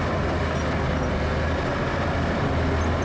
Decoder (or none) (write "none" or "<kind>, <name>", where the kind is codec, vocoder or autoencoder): none